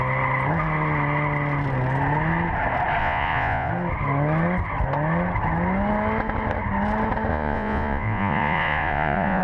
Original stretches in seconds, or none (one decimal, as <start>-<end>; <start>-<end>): 0.0-3.0; 3.7-7.3